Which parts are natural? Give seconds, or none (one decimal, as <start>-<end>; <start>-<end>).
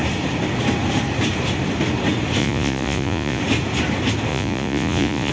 0.0-2.4; 3.4-4.3